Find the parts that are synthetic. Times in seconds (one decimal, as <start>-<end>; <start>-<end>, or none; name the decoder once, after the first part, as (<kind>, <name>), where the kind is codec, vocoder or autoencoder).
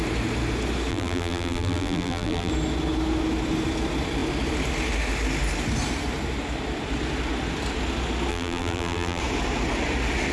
0.9-2.5 (vocoder, BigVGAN v2); 8.3-9.2